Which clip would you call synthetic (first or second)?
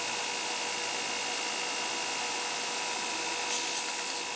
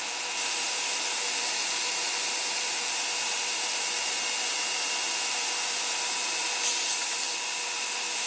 second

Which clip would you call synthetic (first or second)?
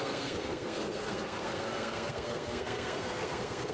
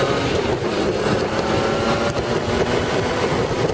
first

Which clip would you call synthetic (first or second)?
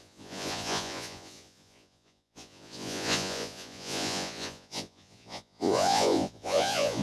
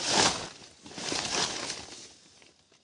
first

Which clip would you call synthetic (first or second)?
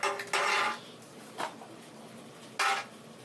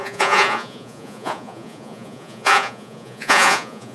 second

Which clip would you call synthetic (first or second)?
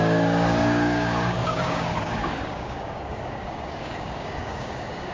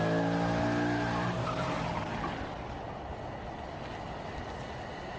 first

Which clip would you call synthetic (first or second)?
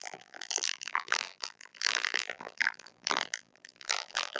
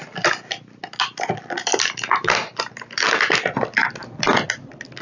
first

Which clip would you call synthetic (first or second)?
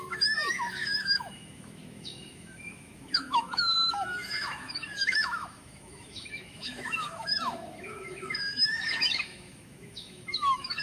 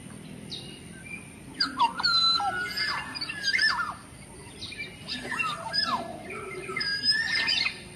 first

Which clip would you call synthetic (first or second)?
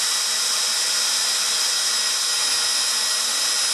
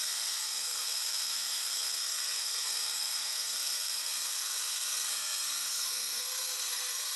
second